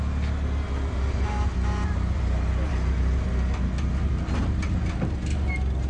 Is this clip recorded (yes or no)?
yes